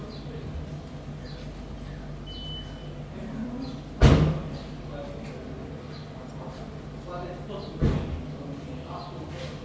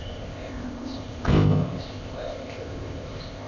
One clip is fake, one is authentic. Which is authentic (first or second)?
first